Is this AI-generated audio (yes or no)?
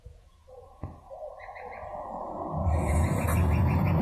yes